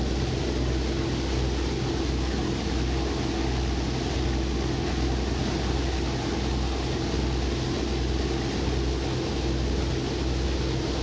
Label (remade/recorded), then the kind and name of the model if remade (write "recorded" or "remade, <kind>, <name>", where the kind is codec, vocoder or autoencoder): recorded